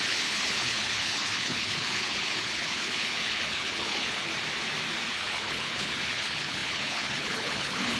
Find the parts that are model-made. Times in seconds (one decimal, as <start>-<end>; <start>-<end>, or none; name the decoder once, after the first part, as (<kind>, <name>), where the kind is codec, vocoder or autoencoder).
0.0-4.3 (codec, HILCodec); 5.1-8.0